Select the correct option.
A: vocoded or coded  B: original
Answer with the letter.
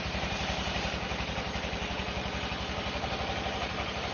A